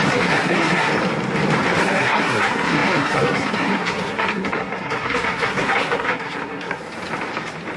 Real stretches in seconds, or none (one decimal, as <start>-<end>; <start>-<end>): 0.9-1.8; 6.8-7.8

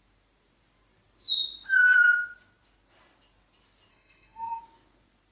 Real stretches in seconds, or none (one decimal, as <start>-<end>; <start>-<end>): 0.0-3.9; 4.6-5.3

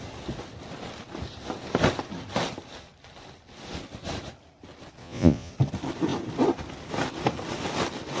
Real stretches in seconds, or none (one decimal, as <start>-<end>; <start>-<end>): 0.0-5.0; 5.5-8.2

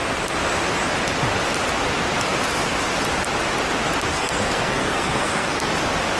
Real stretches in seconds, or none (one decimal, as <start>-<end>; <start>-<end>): 0.0-4.1; 5.7-6.2

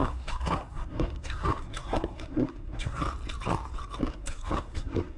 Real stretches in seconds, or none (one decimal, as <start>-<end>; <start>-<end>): 3.0-4.1